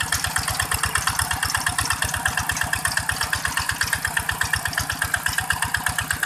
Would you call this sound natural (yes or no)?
yes